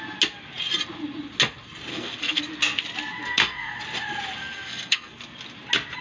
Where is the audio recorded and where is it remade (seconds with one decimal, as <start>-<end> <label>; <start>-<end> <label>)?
0.0-1.9 recorded; 1.9-2.4 remade; 2.4-3.2 recorded; 3.2-3.8 remade; 3.8-4.4 recorded; 4.4-5.1 remade; 5.1-6.0 recorded